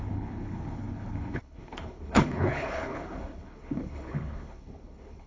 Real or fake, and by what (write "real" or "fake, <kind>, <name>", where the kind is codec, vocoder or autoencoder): fake, codec, HILCodec